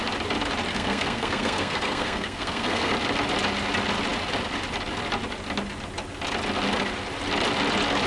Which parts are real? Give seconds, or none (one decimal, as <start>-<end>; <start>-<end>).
0.0-0.7; 2.9-8.1